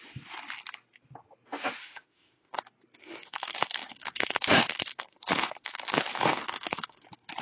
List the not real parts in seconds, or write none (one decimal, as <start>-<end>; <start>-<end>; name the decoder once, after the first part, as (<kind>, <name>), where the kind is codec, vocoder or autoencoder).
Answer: 1.8-2.6 (autoencoder, DAC-VAE); 3.0-7.0